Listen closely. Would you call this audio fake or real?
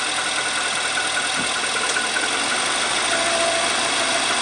real